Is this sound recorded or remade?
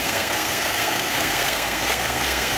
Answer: remade